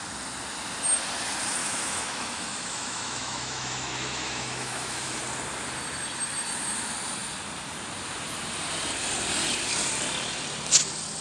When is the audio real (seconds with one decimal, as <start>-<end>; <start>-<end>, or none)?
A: 0.0-1.6; 5.2-11.2